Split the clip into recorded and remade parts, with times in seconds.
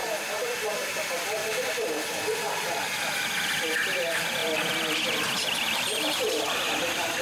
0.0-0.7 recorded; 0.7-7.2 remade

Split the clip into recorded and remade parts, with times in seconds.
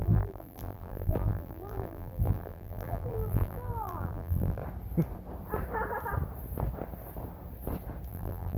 0.0-4.6 remade; 4.6-8.1 recorded; 8.1-8.6 remade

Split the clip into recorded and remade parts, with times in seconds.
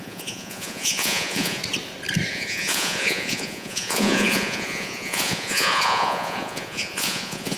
0.0-1.6 remade; 1.6-2.3 recorded; 2.3-7.6 remade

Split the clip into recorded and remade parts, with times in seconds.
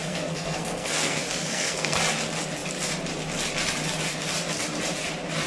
0.0-2.0 remade; 2.0-5.5 recorded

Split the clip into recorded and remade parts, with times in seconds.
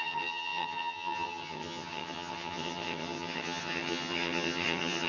0.0-5.1 remade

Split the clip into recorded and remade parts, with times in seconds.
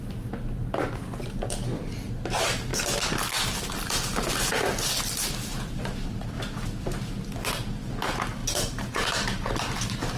0.0-8.4 recorded; 8.4-10.2 remade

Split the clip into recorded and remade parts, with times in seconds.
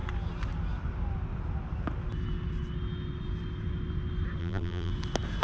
0.0-4.4 recorded; 4.4-4.9 remade; 4.9-5.4 recorded